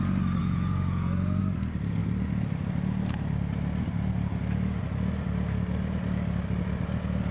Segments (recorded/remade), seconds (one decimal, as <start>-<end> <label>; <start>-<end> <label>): 0.0-0.4 recorded; 0.4-1.4 remade; 1.4-7.3 recorded